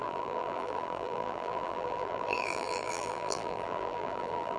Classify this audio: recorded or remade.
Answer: remade